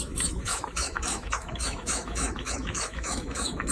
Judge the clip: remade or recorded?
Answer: remade